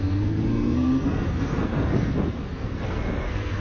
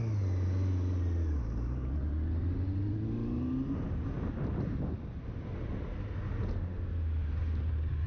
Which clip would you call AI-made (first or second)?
first